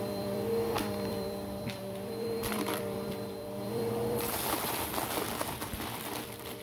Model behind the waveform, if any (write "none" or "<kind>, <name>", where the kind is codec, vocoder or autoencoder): vocoder, BigVGAN v2